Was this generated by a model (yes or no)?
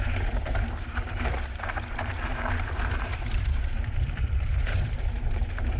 yes